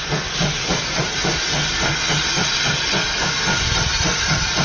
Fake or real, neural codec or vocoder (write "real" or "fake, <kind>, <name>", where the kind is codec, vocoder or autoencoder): real